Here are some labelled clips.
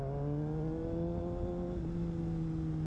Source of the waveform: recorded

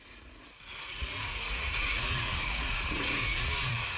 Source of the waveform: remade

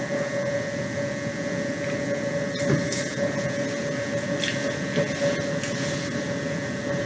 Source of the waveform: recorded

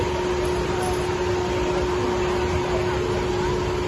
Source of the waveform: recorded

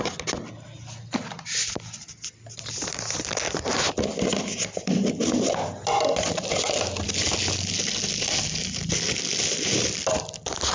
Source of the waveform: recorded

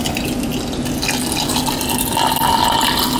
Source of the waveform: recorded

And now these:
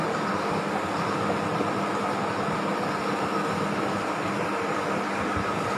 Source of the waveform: recorded